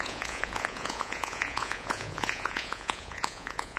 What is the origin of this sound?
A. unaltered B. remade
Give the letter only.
B